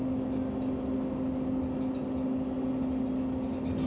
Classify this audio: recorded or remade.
recorded